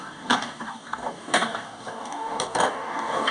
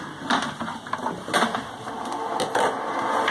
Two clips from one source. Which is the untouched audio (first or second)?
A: second